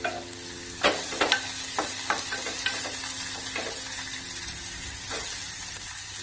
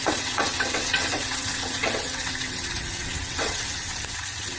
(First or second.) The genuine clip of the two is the first